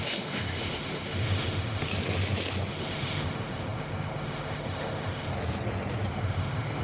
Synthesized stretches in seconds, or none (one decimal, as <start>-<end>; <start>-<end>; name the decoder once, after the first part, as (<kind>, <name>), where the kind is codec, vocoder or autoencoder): 0.0-1.9 (autoencoder, DAC-VAE); 2.7-5.3; 6.1-6.8